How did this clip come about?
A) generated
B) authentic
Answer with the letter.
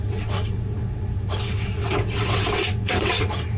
A